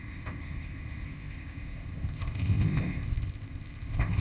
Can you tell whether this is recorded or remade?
remade